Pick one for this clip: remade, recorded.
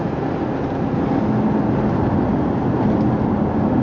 recorded